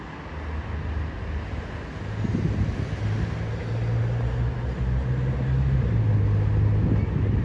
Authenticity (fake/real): real